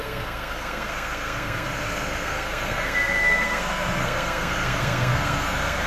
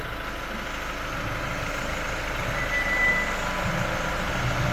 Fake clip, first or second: first